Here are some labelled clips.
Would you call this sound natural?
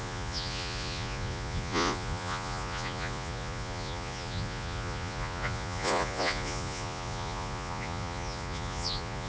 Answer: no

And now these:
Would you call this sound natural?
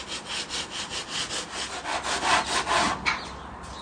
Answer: yes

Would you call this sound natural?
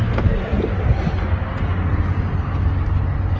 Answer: yes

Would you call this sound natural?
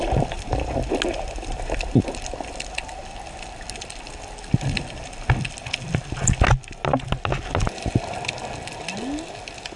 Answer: yes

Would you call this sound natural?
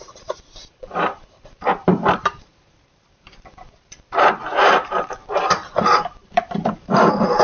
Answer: no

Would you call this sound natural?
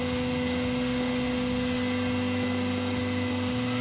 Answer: yes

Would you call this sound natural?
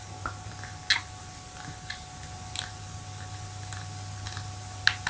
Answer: yes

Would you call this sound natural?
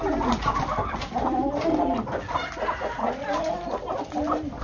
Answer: yes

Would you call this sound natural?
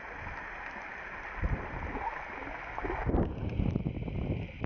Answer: yes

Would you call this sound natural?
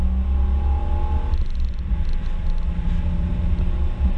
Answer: yes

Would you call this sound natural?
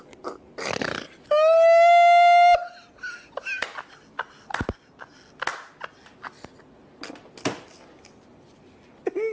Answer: yes